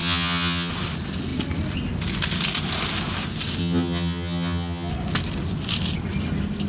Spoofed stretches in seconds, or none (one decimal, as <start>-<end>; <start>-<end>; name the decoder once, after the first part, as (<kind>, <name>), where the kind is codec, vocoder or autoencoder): 0.0-0.7 (vocoder, HiFi-GAN); 3.6-4.9

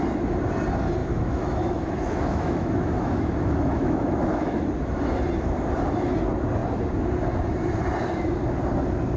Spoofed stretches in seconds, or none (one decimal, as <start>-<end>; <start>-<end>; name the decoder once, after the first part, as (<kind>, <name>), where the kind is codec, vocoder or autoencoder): 1.0-4.6 (autoencoder, DAC-VAE)